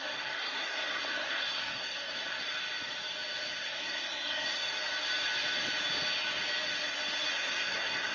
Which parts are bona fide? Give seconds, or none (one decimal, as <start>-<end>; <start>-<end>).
2.4-3.6; 4.8-7.3